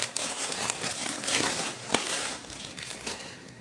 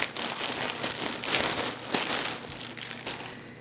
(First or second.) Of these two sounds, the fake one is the first